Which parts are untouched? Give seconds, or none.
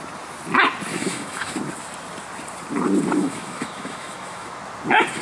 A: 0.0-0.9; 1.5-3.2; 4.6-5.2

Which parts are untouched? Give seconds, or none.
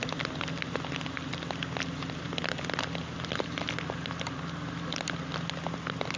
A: 0.0-6.2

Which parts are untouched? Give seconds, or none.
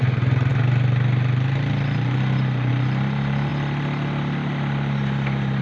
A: 0.0-5.6